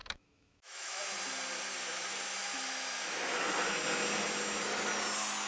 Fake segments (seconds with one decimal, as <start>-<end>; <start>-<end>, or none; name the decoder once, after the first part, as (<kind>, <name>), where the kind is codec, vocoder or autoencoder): 0.0-1.0 (autoencoder, DAC-VAE)

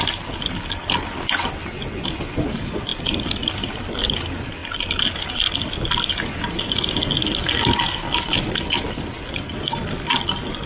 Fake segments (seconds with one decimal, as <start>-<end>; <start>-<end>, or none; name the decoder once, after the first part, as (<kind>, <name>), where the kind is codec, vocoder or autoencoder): none

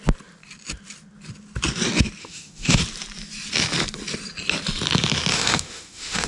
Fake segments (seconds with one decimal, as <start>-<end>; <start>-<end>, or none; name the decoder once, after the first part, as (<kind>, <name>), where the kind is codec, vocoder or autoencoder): 2.2-2.8 (autoencoder, DAC-VAE); 5.3-6.3

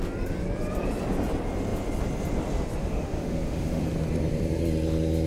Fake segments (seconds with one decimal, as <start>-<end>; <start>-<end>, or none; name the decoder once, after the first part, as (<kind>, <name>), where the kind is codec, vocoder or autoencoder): 2.8-3.8 (autoencoder, DAC-VAE)

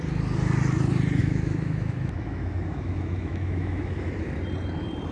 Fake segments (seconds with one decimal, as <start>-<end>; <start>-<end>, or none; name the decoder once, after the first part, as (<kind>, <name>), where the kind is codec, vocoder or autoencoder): 1.2-4.3 (autoencoder, DAC-VAE)

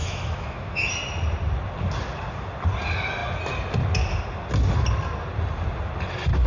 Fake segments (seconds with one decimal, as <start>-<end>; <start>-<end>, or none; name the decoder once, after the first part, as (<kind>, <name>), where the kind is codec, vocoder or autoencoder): 0.0-0.9 (autoencoder, DAC-VAE)